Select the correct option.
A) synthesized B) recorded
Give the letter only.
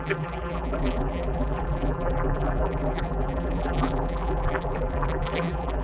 A